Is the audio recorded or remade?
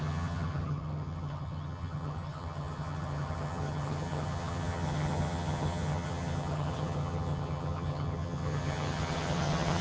remade